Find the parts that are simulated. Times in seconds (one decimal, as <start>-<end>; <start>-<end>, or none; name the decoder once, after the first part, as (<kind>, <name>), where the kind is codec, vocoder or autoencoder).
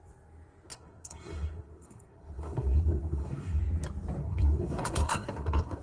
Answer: 0.7-3.6 (codec, SNAC); 4.2-5.8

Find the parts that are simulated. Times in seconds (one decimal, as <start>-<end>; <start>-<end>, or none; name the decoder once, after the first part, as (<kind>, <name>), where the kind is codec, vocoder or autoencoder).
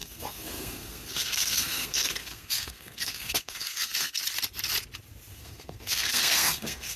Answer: 0.0-4.2 (codec, SNAC); 5.3-7.0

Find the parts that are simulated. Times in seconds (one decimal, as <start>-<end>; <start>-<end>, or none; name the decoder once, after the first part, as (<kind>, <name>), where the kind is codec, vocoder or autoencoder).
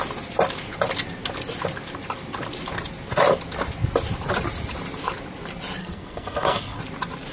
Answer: 5.8-6.8 (codec, SNAC)